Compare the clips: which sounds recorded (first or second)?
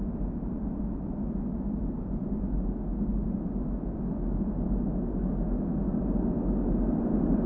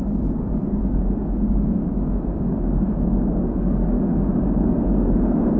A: first